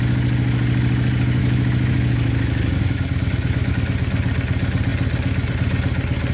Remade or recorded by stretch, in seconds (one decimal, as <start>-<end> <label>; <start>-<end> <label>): 0.0-1.4 recorded; 1.4-3.7 remade; 3.7-6.3 recorded